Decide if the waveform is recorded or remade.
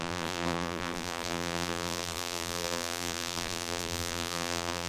remade